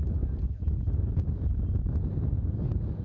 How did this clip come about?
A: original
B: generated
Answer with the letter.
A